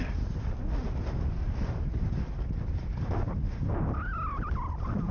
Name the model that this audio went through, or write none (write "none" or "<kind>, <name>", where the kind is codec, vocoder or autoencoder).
none